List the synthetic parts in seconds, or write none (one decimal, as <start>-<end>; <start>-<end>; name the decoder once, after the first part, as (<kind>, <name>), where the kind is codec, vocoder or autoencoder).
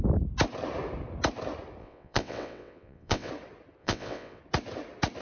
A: 1.8-3.3 (vocoder, WaveNeXt); 3.8-4.4